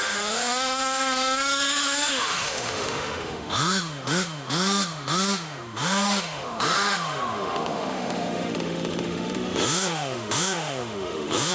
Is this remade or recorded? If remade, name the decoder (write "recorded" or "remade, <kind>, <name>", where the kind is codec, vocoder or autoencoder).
remade, autoencoder, DAC-VAE